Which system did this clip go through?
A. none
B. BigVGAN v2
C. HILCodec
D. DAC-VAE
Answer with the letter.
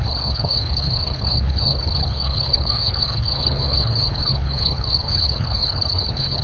C